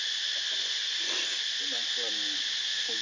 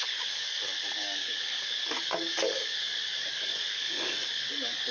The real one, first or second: first